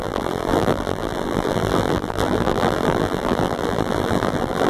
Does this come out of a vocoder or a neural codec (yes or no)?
yes